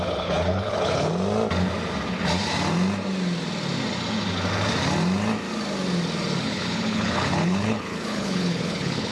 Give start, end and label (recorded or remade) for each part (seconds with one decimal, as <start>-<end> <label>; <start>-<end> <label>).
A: 0.0-1.1 remade; 1.1-6.4 recorded; 6.4-9.1 remade